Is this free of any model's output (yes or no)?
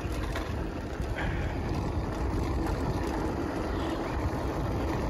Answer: yes